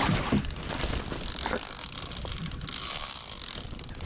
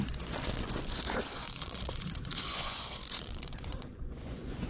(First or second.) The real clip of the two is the first